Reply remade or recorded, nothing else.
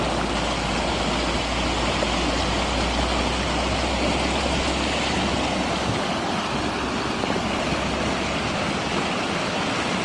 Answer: recorded